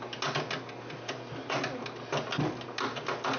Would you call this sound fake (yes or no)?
no